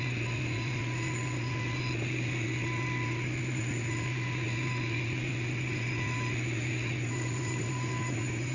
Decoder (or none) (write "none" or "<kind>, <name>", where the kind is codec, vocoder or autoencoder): none